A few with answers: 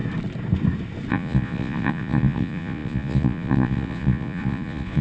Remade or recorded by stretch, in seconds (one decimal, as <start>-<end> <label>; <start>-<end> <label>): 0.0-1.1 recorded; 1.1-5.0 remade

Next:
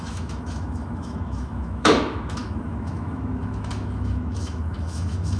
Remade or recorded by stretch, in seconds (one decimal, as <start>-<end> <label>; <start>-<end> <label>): 0.0-5.4 remade

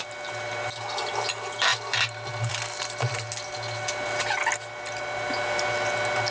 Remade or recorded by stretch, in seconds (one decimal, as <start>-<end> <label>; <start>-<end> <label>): 0.0-6.3 recorded

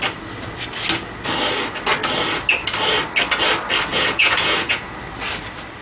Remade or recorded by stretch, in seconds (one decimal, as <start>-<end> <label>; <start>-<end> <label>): 0.0-3.9 recorded; 3.9-5.0 remade; 5.0-5.8 recorded

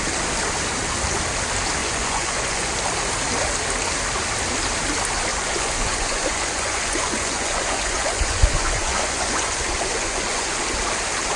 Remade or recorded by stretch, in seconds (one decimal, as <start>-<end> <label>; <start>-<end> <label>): 0.0-1.8 recorded; 1.8-2.7 remade; 2.7-5.3 recorded; 5.3-10.6 remade; 10.6-11.4 recorded

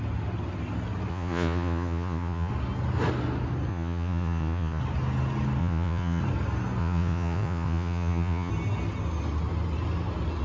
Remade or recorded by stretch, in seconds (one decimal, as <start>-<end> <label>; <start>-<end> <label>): 0.0-1.1 recorded; 1.1-2.5 remade; 2.5-3.7 recorded; 3.7-4.8 remade; 4.8-5.6 recorded; 5.6-6.2 remade; 6.2-6.8 recorded; 6.8-8.5 remade; 8.5-10.4 recorded